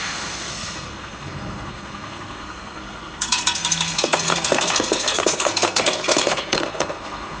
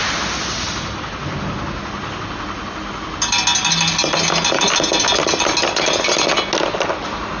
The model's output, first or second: first